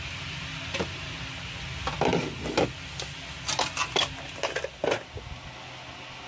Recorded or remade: recorded